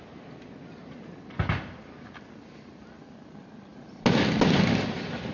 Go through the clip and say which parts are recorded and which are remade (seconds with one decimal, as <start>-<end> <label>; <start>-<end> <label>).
0.0-5.3 recorded